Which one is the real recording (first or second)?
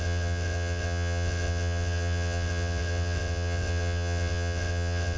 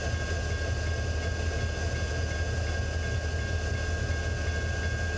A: second